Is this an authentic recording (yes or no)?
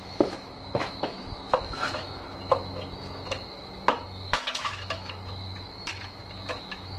no